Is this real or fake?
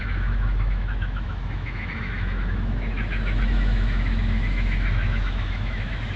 fake